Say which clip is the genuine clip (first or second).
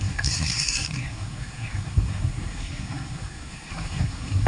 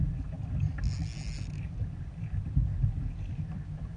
second